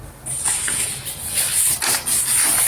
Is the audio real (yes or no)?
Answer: yes